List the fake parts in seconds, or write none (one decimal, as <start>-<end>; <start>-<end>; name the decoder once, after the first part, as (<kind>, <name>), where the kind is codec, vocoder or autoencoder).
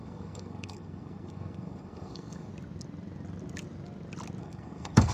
0.0-2.5 (codec, SNAC); 4.4-5.1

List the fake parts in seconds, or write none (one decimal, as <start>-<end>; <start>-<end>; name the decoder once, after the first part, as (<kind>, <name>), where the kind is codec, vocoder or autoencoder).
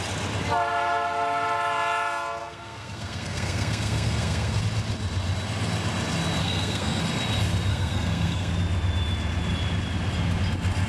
2.4-4.6 (codec, SNAC); 6.4-7.0; 7.7-8.5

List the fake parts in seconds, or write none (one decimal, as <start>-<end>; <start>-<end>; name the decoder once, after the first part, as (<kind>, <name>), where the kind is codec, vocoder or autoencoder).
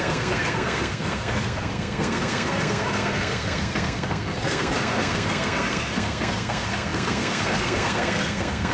0.0-8.7 (codec, SNAC)